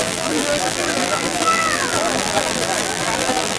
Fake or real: fake